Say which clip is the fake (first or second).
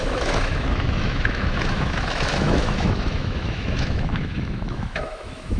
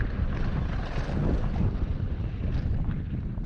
first